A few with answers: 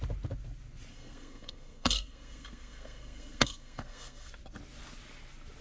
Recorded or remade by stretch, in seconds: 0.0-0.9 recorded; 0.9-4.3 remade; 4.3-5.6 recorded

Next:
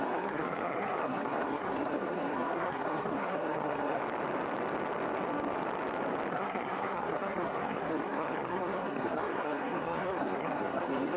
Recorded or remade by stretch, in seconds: 0.0-4.0 remade; 4.0-6.3 recorded; 6.3-11.2 remade